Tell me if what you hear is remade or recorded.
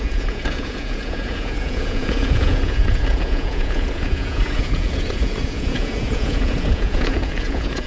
remade